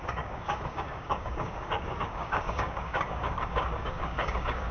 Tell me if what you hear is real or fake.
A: fake